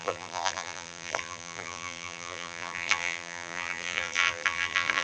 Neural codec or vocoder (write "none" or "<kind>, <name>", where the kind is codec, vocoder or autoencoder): vocoder, BigVGAN v2